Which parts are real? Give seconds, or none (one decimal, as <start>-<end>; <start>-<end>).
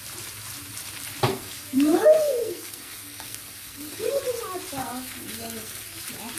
0.0-1.3; 4.2-4.8; 6.0-6.4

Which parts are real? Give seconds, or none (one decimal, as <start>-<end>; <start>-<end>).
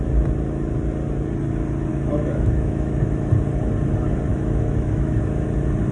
0.0-1.9; 3.3-4.3; 5.2-5.9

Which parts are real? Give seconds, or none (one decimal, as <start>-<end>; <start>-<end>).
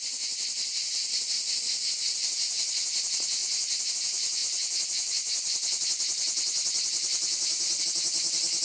0.0-8.6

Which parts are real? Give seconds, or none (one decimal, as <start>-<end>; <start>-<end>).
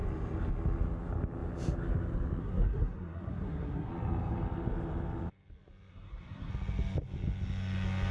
0.0-2.4; 3.9-5.9; 6.5-8.1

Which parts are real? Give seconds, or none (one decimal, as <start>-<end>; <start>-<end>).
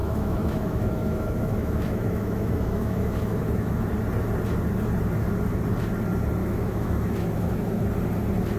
3.9-6.4; 7.8-8.6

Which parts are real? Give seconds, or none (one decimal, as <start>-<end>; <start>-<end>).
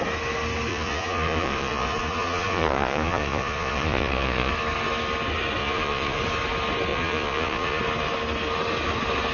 0.0-0.7; 4.5-5.6; 6.2-6.9; 7.8-9.3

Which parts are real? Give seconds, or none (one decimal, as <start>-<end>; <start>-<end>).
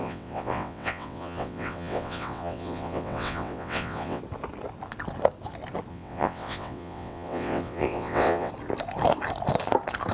4.2-5.9; 8.5-10.1